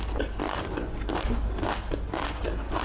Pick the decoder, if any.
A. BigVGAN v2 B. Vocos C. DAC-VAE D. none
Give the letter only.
D